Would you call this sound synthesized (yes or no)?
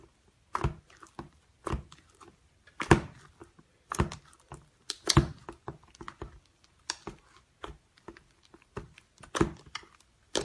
no